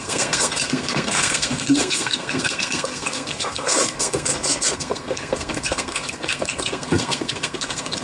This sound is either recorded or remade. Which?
remade